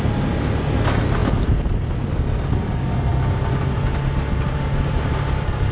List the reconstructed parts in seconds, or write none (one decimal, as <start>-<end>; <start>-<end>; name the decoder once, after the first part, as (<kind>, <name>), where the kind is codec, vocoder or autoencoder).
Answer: none